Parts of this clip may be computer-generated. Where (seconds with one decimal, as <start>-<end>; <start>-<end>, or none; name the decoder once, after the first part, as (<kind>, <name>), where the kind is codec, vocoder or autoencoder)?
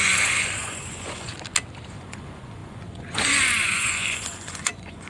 0.0-1.3 (vocoder, Vocos); 1.9-5.1